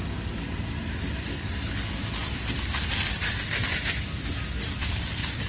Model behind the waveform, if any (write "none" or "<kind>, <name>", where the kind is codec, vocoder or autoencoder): none